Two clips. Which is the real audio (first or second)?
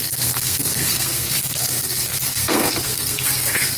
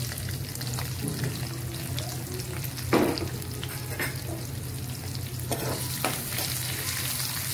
second